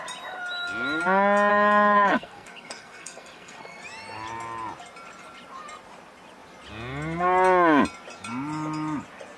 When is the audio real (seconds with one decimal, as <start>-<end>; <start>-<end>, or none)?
0.0-1.5; 3.8-9.4

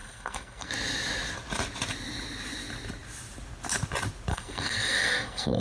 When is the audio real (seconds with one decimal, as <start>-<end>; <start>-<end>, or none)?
0.7-4.3